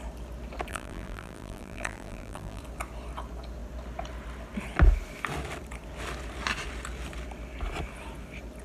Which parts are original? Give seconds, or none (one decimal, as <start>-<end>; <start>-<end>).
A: 0.0-0.7; 2.6-8.6